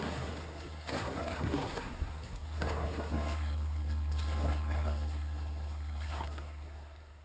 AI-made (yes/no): yes